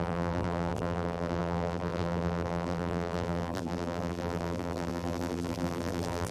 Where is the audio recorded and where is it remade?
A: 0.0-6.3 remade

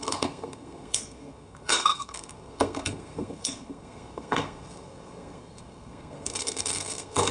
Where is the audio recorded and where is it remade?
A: 0.0-7.3 remade

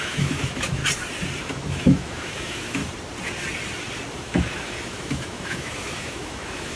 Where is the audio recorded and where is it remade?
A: 0.0-0.8 remade; 0.8-1.4 recorded; 1.4-2.8 remade; 2.8-4.1 recorded; 4.1-6.8 remade

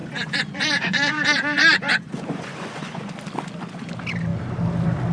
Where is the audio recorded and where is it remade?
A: 0.0-3.1 remade; 3.1-5.1 recorded

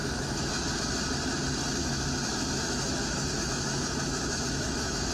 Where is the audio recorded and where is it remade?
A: 0.0-0.7 remade; 0.7-1.8 recorded; 1.8-5.1 remade

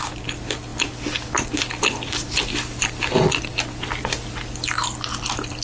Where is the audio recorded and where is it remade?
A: 0.0-5.6 recorded